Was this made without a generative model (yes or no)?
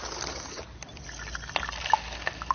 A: yes